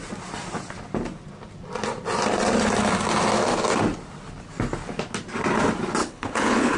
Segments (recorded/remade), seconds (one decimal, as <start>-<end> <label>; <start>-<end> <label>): 0.0-6.0 recorded; 6.0-6.8 remade